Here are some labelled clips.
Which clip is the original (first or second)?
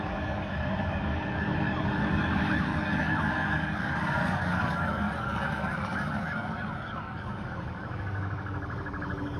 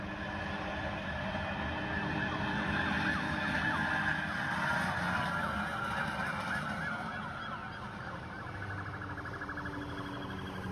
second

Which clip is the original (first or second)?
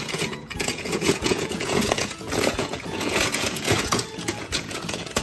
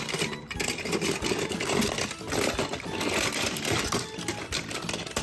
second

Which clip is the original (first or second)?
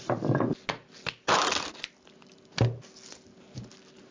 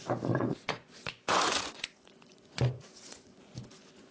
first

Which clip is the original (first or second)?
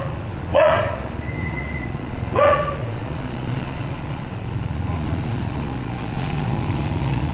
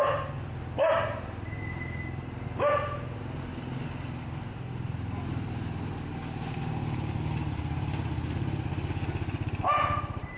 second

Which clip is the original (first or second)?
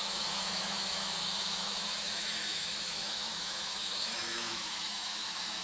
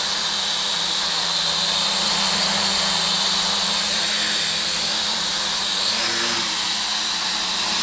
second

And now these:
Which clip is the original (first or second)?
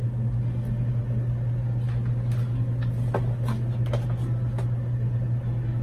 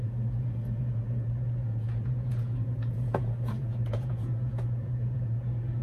first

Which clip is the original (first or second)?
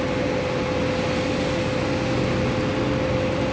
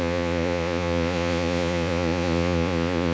first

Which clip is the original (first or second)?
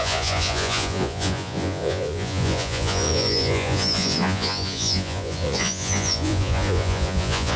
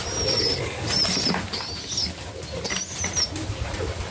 second